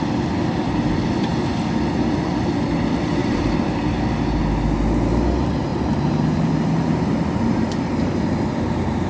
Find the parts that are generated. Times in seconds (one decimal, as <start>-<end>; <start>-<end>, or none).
3.2-4.4; 5.7-9.1